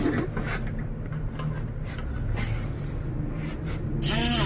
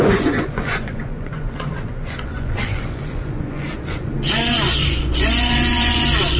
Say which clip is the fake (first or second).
second